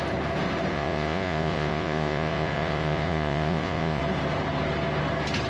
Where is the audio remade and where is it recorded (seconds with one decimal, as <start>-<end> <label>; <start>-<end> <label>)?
0.0-0.7 recorded; 0.7-4.0 remade; 4.0-5.5 recorded